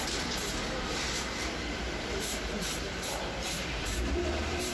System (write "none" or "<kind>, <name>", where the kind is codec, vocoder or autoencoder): vocoder, BigVGAN v2